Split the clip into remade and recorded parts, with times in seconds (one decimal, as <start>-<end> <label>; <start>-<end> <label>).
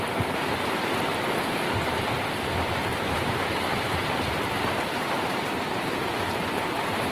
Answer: 0.0-1.1 remade; 1.1-2.1 recorded; 2.1-7.1 remade